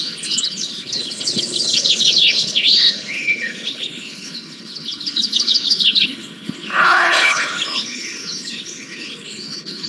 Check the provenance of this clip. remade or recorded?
remade